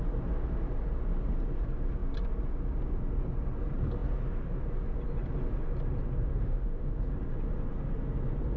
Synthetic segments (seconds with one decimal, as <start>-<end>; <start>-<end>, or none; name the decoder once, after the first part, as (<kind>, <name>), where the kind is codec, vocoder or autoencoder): 6.3-7.0 (autoencoder, DAC-VAE)